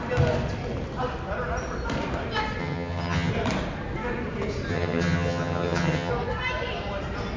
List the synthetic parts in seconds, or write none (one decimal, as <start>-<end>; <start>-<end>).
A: 2.6-3.3; 4.7-6.1